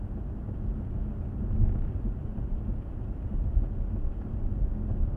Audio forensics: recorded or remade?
recorded